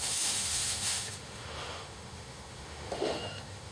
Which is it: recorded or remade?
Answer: remade